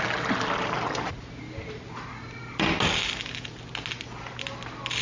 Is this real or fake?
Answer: real